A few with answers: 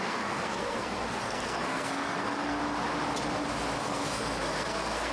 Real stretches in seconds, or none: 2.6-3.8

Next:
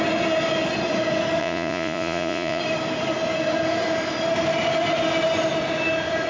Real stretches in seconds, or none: 0.0-1.4; 2.6-6.3

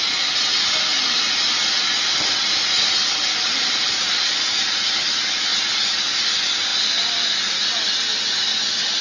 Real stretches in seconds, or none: 0.0-3.0; 3.9-9.0

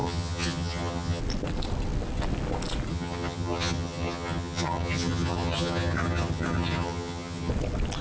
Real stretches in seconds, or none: 1.2-2.9; 7.5-8.0